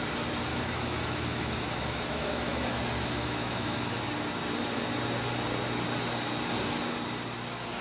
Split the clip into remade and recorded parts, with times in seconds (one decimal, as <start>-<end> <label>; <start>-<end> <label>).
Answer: 0.0-0.5 recorded; 0.5-2.8 remade; 2.8-3.2 recorded; 3.2-4.0 remade; 4.0-7.8 recorded